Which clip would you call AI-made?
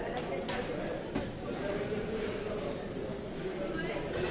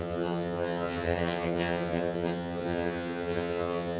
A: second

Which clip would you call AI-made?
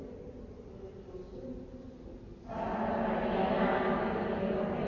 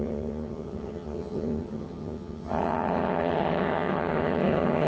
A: second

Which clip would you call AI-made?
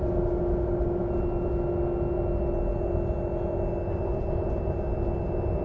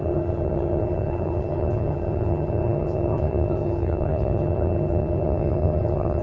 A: second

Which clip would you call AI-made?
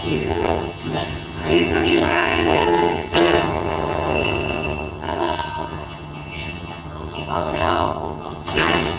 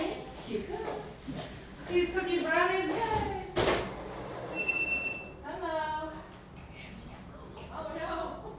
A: first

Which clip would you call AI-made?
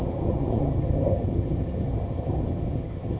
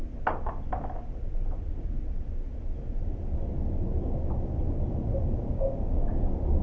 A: first